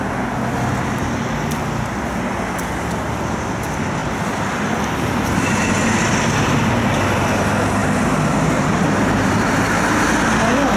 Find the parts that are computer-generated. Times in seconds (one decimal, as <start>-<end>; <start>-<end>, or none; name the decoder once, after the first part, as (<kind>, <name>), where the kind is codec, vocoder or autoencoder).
7.8-8.7 (vocoder, BigVGAN v2)

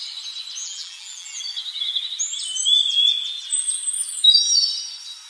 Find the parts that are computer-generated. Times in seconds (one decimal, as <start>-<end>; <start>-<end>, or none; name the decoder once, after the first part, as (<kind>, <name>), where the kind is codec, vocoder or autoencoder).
0.6-1.4 (vocoder, BigVGAN v2)